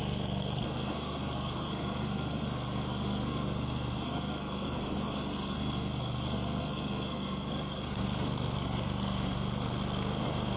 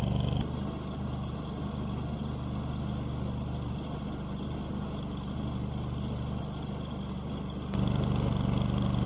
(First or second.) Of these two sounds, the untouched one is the second